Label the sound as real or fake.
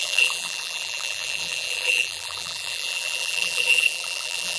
fake